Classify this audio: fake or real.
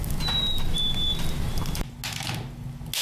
real